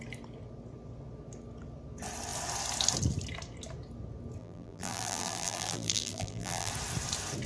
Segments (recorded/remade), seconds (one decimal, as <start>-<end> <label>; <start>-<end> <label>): 0.0-4.4 recorded; 4.4-6.7 remade; 6.7-7.5 recorded